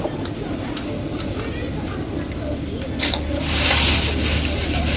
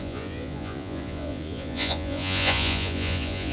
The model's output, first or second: second